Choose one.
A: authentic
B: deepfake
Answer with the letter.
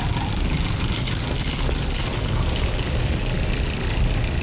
A